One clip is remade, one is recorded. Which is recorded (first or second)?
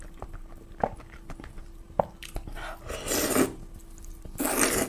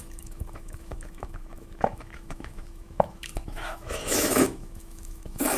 first